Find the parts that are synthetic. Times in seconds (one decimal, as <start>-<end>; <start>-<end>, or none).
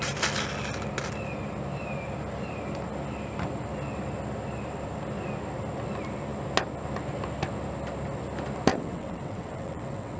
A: 8.7-10.2